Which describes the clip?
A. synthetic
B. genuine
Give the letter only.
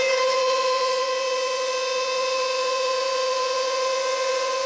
A